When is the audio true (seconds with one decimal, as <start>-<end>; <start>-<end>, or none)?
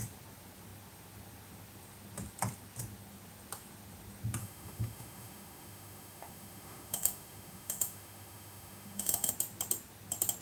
0.0-4.4; 9.3-10.4